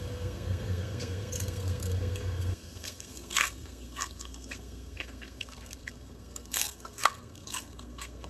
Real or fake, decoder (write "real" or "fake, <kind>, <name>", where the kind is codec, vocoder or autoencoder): fake, codec, SNAC